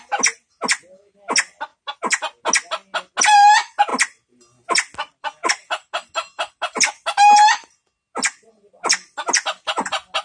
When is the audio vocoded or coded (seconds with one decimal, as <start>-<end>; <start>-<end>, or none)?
none